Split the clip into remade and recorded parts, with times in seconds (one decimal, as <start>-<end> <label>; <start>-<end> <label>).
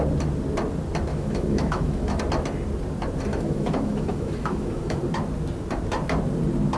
0.0-1.1 recorded; 1.1-2.2 remade; 2.2-3.3 recorded; 3.3-5.0 remade; 5.0-6.8 recorded